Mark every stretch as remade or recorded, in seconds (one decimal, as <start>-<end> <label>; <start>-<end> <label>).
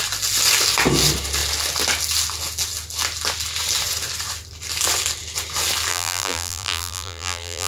0.0-5.9 recorded; 5.9-7.7 remade